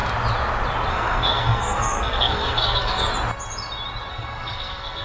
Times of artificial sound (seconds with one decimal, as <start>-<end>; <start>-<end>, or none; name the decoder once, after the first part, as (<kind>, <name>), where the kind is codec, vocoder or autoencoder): 0.9-3.1 (codec, SNAC); 4.1-5.0